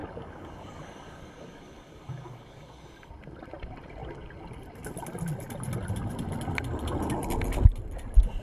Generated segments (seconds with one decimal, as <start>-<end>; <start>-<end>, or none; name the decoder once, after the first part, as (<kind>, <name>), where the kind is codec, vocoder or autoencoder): 0.0-2.8 (codec, DAC)